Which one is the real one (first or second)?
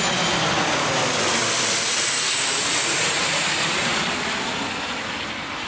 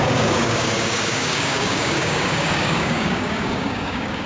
first